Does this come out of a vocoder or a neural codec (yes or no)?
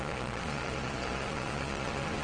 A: yes